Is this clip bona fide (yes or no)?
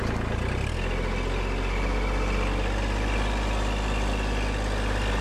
yes